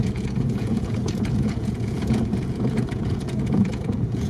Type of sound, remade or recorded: remade